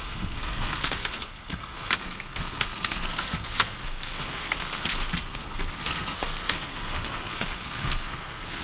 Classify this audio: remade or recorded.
remade